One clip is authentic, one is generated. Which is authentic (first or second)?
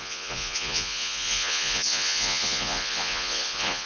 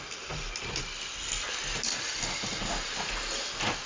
second